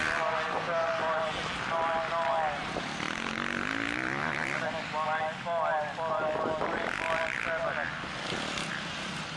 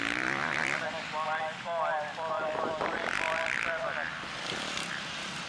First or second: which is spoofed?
second